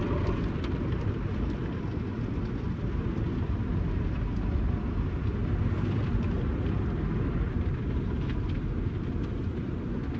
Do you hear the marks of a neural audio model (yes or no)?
no